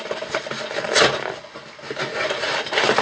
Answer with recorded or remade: recorded